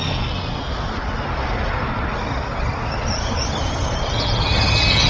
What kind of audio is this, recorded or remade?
recorded